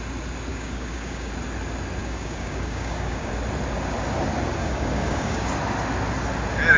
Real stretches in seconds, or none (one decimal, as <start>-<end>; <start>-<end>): 0.0-0.5; 1.3-2.0; 3.3-4.6; 5.5-6.8